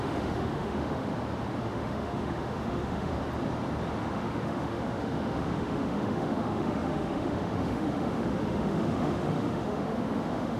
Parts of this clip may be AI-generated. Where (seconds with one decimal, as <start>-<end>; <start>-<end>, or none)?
0.0-1.1; 1.6-3.1; 4.0-10.6